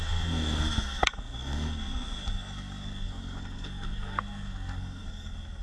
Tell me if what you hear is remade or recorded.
remade